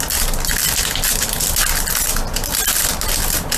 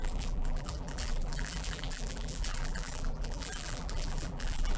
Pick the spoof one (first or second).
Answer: second